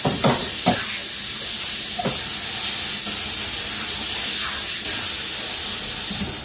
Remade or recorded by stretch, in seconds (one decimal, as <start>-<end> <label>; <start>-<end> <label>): 0.0-6.4 recorded